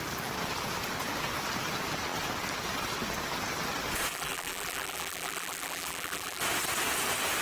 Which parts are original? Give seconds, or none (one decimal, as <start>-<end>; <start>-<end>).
0.0-4.1; 6.4-7.4